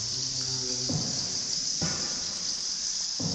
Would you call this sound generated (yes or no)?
no